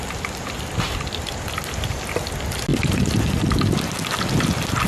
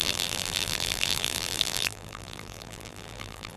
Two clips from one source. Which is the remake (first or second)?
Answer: second